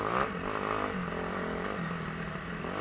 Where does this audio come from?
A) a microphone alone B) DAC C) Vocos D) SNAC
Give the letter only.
A